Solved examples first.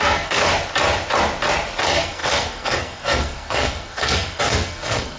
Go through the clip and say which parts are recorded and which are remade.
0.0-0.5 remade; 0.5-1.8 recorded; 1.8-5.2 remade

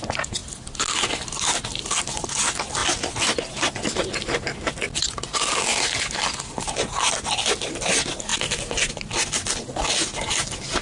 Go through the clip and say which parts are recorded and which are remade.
0.0-10.8 recorded

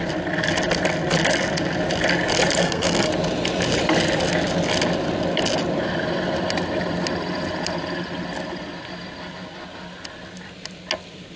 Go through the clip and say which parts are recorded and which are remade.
0.0-2.6 recorded; 2.6-3.1 remade; 3.1-11.4 recorded

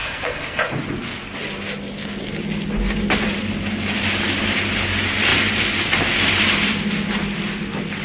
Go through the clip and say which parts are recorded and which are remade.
0.0-0.6 remade; 0.6-8.0 recorded

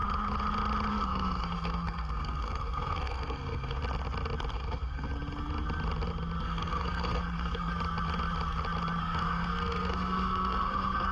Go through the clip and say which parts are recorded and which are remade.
0.0-0.9 recorded; 0.9-3.8 remade; 3.8-4.5 recorded; 4.5-5.1 remade; 5.1-6.4 recorded; 6.4-7.7 remade; 7.7-9.0 recorded; 9.0-11.1 remade

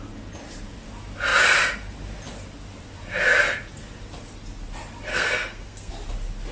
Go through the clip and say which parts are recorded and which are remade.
0.0-5.1 recorded; 5.1-5.9 remade; 5.9-6.5 recorded

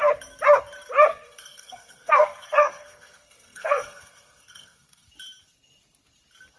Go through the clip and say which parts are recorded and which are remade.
0.0-1.1 recorded; 1.1-5.1 remade; 5.1-6.6 recorded